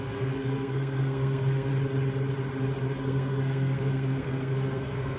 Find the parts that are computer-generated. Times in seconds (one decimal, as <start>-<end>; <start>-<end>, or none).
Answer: 0.0-1.7; 2.8-5.2